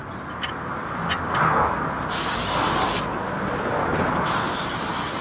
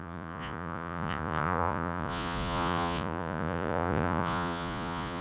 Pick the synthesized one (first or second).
second